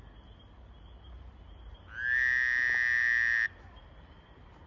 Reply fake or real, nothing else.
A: real